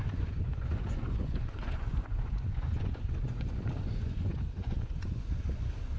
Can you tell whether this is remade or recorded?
remade